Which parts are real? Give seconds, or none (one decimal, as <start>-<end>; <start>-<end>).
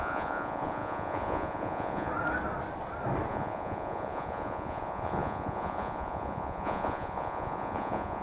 2.1-3.3